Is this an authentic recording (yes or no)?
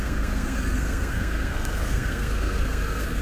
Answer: no